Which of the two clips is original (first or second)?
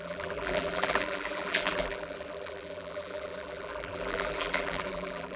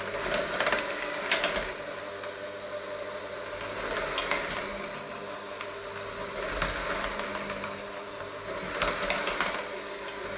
second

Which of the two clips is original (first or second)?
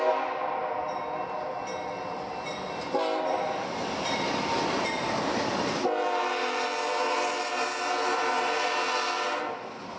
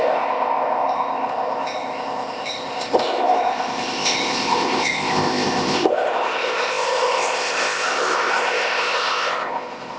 first